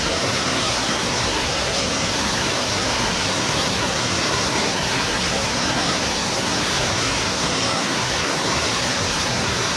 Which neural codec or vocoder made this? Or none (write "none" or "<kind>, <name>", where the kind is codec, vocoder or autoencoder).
codec, SNAC